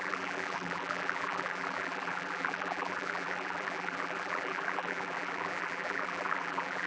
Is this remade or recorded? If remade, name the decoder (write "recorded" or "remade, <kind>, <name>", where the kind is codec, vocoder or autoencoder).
remade, vocoder, BigVGAN v2